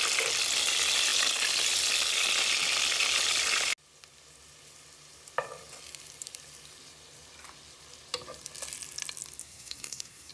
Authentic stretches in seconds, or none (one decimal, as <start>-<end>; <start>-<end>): 0.0-9.4